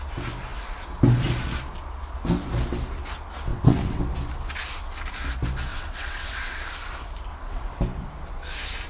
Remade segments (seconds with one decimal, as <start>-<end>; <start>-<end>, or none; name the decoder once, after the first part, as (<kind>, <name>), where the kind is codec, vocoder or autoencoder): 3.5-4.0 (vocoder, WaveNeXt); 5.7-6.6; 7.3-7.8